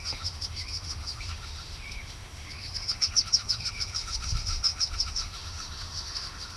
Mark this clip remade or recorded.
remade